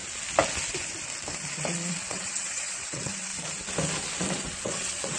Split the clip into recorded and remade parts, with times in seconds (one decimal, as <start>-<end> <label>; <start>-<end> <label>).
0.0-1.9 recorded; 1.9-3.3 remade; 3.3-4.3 recorded; 4.3-5.2 remade